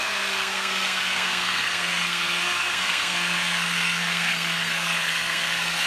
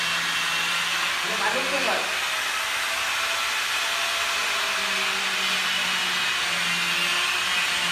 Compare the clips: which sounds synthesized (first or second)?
first